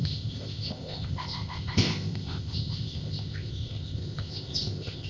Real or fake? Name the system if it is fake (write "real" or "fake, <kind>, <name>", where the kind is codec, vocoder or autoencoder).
fake, codec, ZipCodec